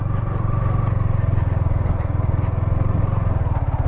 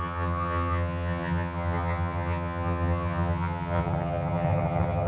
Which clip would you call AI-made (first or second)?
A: second